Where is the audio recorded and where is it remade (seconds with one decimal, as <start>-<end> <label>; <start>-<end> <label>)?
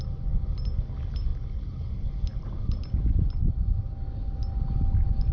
0.0-5.3 recorded